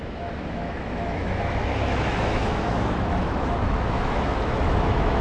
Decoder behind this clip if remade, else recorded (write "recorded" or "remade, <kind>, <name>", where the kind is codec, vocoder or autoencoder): remade, autoencoder, DAC-VAE